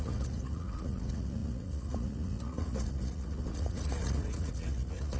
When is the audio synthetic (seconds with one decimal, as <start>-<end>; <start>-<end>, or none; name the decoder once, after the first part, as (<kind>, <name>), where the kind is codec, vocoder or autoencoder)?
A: 0.0-5.2 (vocoder, Vocos)